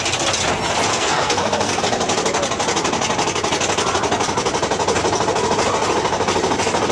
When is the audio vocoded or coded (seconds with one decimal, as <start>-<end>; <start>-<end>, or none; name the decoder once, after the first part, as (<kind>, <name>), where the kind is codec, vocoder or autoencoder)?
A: 0.9-1.8 (codec, SNAC)

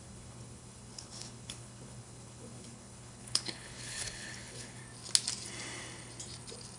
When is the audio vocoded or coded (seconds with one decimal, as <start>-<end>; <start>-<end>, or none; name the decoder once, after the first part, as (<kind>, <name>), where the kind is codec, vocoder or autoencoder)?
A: 0.0-4.8 (codec, HILCodec)

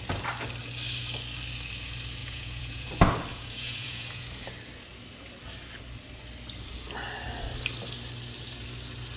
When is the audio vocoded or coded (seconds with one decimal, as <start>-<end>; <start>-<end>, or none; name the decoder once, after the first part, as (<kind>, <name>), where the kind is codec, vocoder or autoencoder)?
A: 2.2-2.9 (vocoder, Vocos); 3.3-4.2